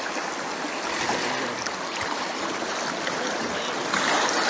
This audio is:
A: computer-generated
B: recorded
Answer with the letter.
B